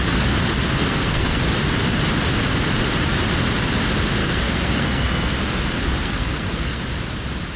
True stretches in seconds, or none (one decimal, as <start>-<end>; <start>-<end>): 0.0-0.8; 1.4-4.2; 5.3-6.0; 6.8-7.6